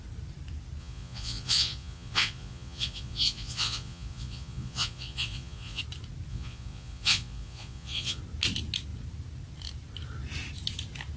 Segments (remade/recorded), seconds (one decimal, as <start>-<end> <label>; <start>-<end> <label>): 0.0-0.8 recorded; 0.8-5.8 remade; 5.8-6.3 recorded; 6.3-8.2 remade; 8.2-11.2 recorded